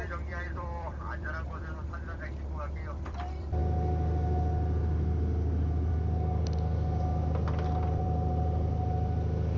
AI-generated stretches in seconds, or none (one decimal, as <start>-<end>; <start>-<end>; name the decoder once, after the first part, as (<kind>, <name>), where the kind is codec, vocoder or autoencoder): 0.0-3.6 (vocoder, BigVGAN v2); 5.9-9.6